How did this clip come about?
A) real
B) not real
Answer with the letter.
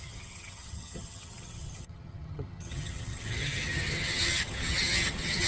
B